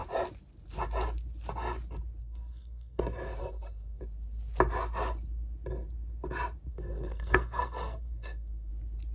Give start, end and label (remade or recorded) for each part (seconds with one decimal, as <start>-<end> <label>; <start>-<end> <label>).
0.0-2.2 recorded; 2.2-3.0 remade; 3.0-3.4 recorded; 3.4-4.0 remade; 4.0-6.7 recorded; 6.7-8.7 remade; 8.7-9.1 recorded